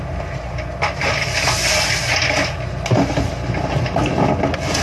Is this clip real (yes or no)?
yes